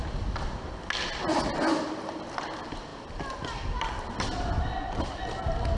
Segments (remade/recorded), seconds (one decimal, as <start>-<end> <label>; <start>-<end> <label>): 0.0-5.8 recorded